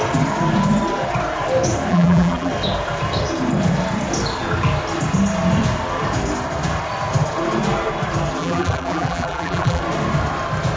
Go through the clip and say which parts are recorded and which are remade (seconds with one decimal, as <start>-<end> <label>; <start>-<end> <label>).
0.0-1.9 recorded; 1.9-2.5 remade; 2.5-8.4 recorded; 8.4-9.8 remade; 9.8-10.8 recorded